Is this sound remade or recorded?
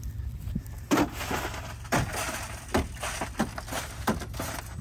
recorded